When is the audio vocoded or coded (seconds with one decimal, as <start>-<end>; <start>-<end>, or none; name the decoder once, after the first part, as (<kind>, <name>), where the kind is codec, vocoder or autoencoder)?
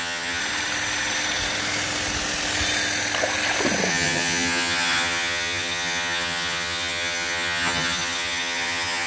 0.0-0.4 (vocoder, HiFi-GAN); 3.9-9.1